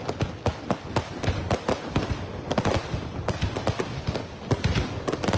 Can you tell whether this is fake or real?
real